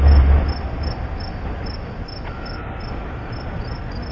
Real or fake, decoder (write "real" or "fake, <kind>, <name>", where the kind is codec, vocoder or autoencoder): real